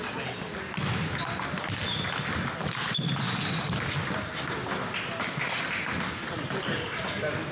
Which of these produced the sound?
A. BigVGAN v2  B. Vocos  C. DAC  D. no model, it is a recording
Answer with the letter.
D